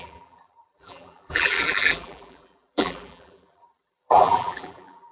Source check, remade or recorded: remade